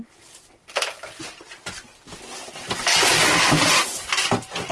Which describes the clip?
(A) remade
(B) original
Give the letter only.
B